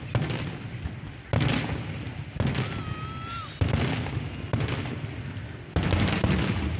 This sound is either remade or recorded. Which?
recorded